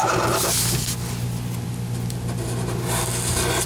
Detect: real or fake real